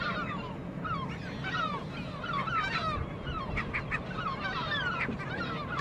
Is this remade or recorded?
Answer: recorded